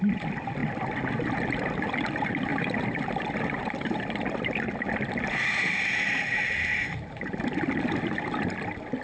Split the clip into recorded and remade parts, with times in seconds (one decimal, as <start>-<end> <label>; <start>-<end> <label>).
0.0-9.0 recorded